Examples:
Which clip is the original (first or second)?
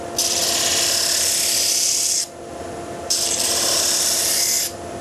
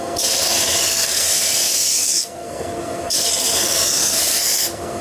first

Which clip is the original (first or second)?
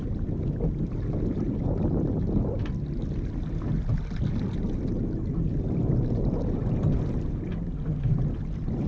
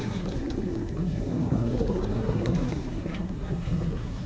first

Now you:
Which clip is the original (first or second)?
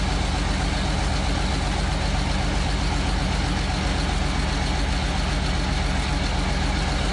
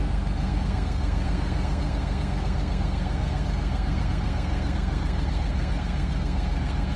first